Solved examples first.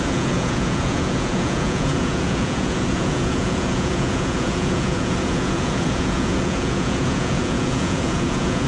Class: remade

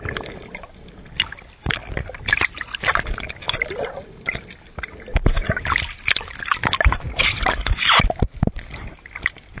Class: recorded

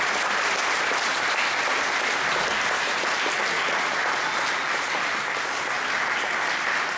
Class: recorded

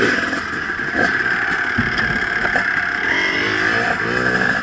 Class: recorded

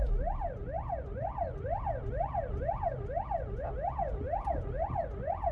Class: remade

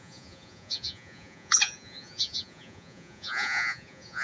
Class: remade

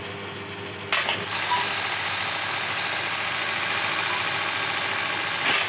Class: recorded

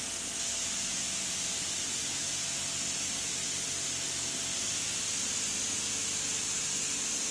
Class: recorded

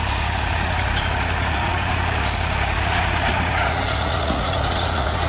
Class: remade